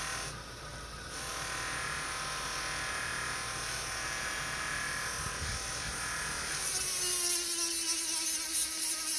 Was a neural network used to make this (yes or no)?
no